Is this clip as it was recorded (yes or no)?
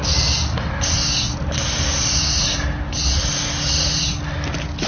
yes